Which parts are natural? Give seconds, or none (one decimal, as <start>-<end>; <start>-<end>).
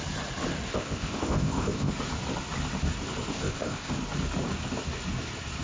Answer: 0.0-0.7; 1.9-3.3; 3.9-5.6